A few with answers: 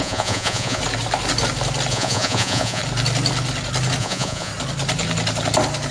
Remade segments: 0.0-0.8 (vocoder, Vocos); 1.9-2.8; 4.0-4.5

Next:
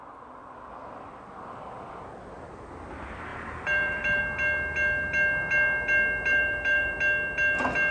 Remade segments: 3.3-4.2 (vocoder, BigVGAN v2); 6.3-6.9

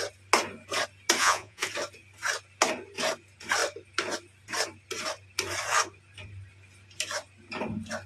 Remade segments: 1.2-1.7 (vocoder, Vocos)

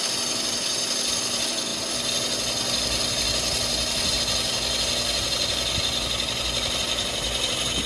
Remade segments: none

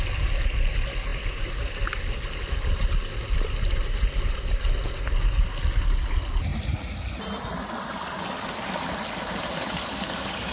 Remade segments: none

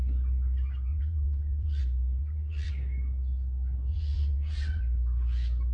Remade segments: 0.9-1.8 (vocoder, WaveNeXt); 2.2-2.7; 3.9-4.8

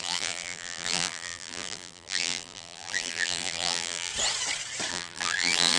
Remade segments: 0.0-4.1 (vocoder, BigVGAN v2); 4.9-5.8

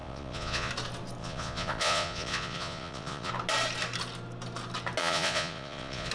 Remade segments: 0.0-0.7 (vocoder, Vocos); 1.2-3.3; 5.0-6.1